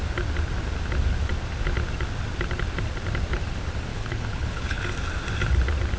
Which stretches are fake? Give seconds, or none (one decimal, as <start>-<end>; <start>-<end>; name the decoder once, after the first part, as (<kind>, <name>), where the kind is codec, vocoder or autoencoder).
3.9-4.8 (codec, HILCodec)